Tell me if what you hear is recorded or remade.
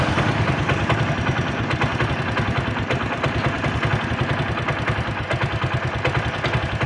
recorded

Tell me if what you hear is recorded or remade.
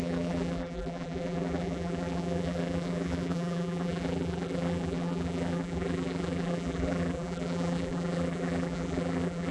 remade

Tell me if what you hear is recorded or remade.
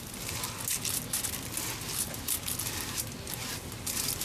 recorded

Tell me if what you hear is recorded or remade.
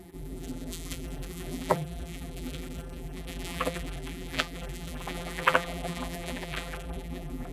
remade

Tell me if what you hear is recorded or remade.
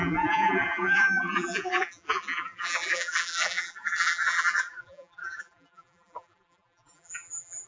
remade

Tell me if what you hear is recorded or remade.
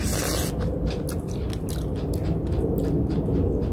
recorded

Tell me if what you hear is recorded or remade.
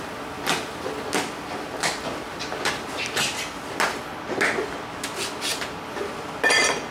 recorded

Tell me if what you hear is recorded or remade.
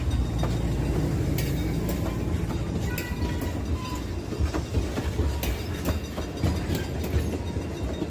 recorded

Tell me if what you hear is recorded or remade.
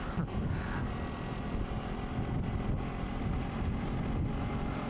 remade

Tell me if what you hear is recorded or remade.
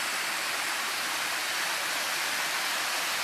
remade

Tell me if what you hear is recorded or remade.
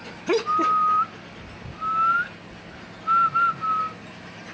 recorded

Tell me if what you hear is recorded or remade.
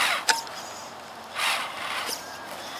remade